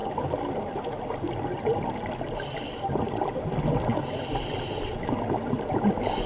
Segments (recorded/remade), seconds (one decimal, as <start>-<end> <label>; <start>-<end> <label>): 0.0-6.3 recorded